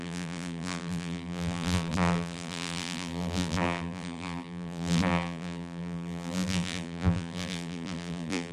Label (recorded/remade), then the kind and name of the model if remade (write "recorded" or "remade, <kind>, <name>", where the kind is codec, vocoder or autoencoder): remade, vocoder, BigVGAN v2